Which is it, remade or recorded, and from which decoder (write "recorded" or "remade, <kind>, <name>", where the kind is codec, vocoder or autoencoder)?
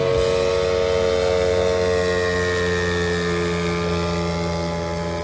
recorded